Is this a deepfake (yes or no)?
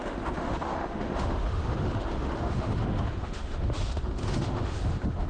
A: yes